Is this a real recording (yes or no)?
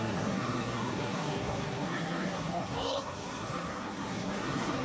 no